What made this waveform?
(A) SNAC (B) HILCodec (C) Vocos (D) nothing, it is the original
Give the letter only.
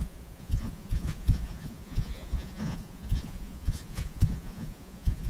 C